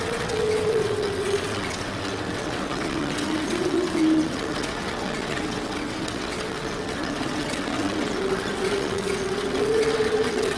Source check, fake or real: fake